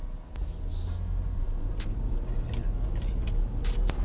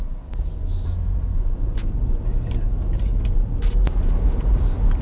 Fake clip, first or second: second